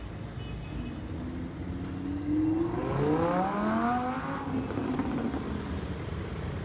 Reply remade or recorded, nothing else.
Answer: recorded